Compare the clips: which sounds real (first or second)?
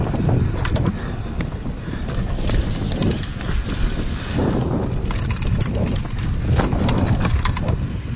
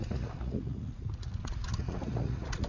first